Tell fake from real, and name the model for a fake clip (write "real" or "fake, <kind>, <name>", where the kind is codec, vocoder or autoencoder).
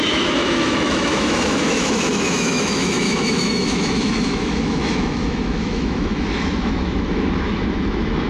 fake, autoencoder, DAC-VAE